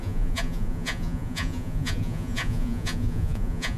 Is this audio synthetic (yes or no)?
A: yes